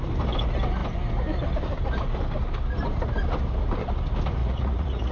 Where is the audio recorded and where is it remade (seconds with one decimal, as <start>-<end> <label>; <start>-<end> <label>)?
0.0-4.4 recorded; 4.4-5.1 remade